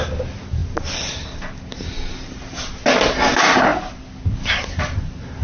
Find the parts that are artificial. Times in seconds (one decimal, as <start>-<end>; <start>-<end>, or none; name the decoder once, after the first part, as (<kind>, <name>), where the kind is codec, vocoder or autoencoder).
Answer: none